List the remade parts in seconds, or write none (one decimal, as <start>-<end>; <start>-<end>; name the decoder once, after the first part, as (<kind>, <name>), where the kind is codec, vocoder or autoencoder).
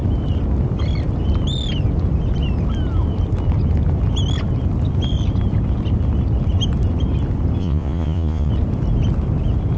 7.6-8.5 (vocoder, Vocos)